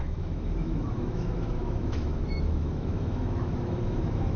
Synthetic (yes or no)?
yes